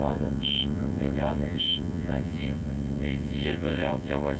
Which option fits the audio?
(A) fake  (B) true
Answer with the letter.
A